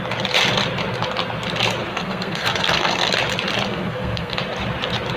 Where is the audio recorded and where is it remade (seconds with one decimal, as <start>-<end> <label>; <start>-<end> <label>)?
0.0-1.9 recorded; 1.9-3.1 remade; 3.1-3.7 recorded; 3.7-4.4 remade; 4.4-5.2 recorded